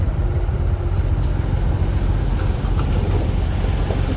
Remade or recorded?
recorded